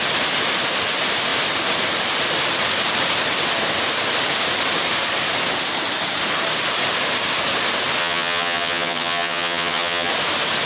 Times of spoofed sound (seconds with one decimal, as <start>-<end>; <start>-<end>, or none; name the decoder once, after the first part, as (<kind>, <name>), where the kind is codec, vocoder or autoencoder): 8.0-10.1 (vocoder, HiFi-GAN)